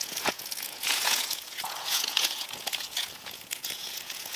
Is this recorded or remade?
remade